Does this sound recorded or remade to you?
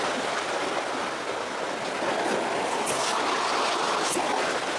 recorded